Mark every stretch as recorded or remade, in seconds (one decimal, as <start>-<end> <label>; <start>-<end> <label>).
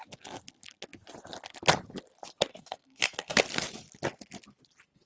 0.0-2.5 recorded; 2.5-3.4 remade; 3.4-5.1 recorded